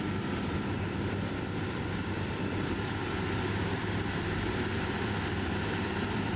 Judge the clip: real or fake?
fake